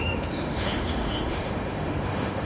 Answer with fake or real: fake